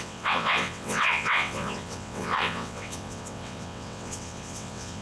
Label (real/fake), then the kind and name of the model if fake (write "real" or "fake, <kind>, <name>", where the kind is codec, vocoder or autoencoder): fake, vocoder, WaveNeXt